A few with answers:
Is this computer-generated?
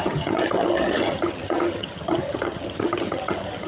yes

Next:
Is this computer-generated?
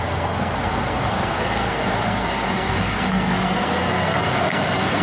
yes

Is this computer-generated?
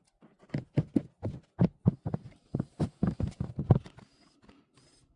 no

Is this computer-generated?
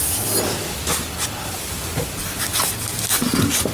no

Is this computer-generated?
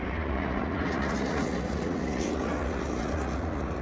yes